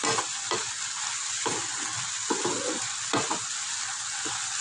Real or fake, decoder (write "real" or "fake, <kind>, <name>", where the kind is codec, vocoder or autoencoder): real